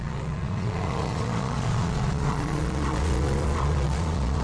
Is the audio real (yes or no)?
no